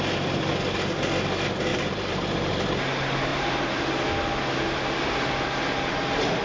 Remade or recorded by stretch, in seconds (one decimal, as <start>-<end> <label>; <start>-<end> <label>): 0.0-1.7 recorded; 1.7-2.5 remade; 2.5-3.3 recorded; 3.3-4.0 remade; 4.0-6.4 recorded